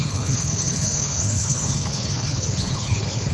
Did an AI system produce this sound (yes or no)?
yes